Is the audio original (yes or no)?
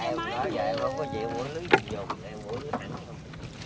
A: yes